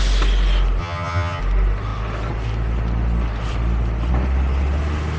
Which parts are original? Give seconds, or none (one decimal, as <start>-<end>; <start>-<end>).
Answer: 0.0-0.8; 1.4-5.2